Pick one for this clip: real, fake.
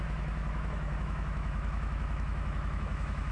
fake